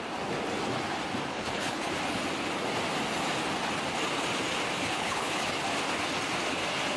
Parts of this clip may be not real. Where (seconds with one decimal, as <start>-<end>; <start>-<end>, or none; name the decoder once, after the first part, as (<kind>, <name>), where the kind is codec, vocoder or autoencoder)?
1.3-1.9 (codec, HILCodec); 4.8-5.5